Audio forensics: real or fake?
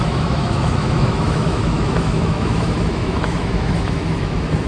fake